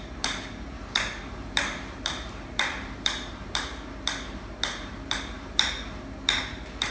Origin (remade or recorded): remade